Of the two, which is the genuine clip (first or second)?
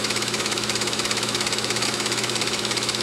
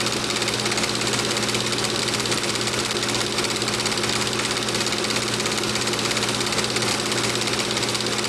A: second